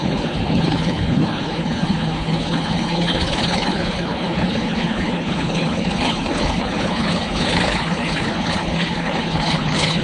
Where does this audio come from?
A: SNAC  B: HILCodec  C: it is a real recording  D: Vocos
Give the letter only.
B